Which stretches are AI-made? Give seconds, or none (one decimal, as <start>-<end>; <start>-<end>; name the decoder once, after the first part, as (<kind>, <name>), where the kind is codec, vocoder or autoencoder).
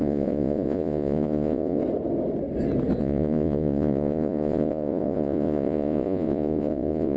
0.0-1.8 (vocoder, Vocos); 3.0-7.2